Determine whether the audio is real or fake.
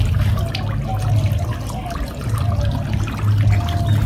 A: real